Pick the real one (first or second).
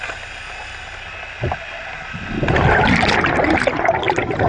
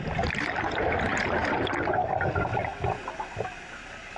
first